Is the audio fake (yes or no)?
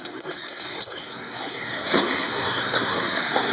yes